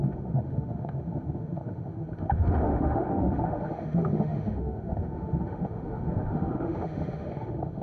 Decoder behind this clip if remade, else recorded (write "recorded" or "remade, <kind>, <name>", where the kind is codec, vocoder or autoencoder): remade, autoencoder, DAC-VAE